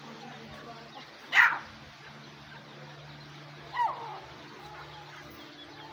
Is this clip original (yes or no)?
yes